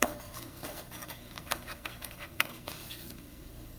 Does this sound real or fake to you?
fake